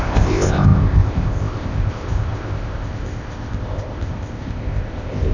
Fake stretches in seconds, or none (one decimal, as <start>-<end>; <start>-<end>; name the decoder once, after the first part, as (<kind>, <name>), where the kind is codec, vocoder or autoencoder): 0.0-5.3 (codec, ZipCodec)